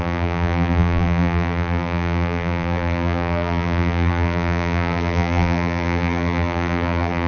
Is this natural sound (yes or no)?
no